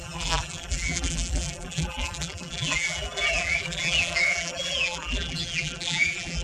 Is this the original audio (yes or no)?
no